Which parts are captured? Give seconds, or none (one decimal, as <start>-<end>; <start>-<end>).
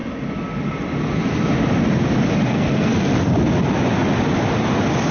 0.0-2.5; 3.2-5.1